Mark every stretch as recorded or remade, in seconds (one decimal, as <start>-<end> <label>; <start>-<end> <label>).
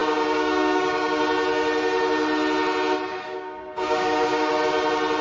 0.0-1.2 remade; 1.2-3.1 recorded; 3.1-4.5 remade; 4.5-5.2 recorded